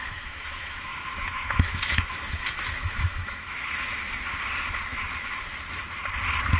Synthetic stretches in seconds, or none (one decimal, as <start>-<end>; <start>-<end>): 0.0-4.0